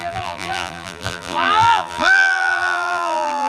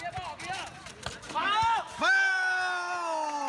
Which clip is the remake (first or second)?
first